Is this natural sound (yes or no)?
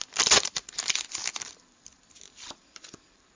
no